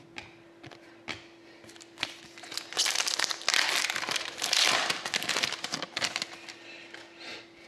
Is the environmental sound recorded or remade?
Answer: recorded